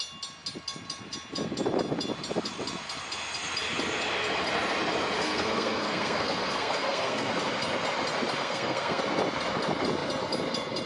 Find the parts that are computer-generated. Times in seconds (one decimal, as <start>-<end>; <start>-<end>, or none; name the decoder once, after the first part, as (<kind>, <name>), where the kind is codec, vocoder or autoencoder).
5.2-7.3 (codec, SNAC); 8.4-9.0

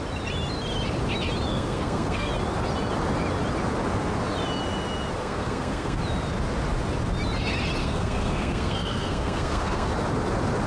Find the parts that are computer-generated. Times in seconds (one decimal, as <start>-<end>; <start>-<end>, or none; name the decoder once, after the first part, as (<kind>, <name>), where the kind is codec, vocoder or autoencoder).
1.5-2.3 (codec, SNAC); 5.2-6.0; 7.8-9.9